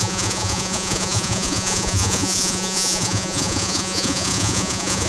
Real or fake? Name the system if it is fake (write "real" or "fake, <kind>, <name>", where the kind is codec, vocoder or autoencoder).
fake, vocoder, Vocos